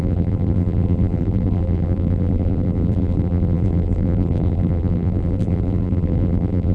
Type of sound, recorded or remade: remade